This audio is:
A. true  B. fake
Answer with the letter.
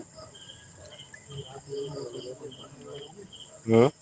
A